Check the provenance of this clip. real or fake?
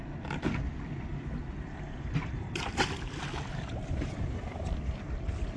real